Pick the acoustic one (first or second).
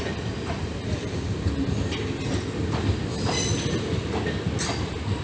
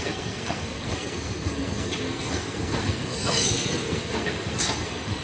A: first